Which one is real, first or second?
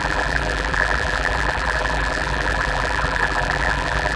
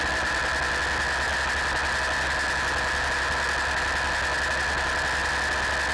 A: second